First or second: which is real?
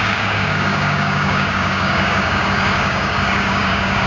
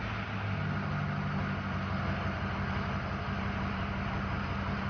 second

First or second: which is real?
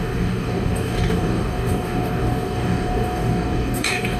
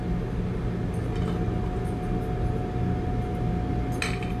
second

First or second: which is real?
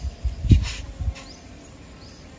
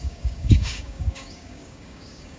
first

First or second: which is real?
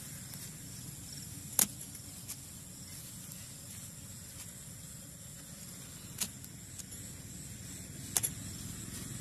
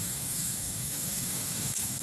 first